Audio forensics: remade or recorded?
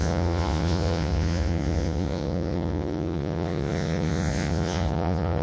remade